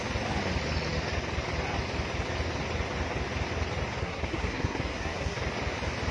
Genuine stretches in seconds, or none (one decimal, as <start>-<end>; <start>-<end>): 0.0-4.0; 5.4-6.1